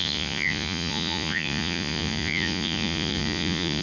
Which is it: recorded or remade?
remade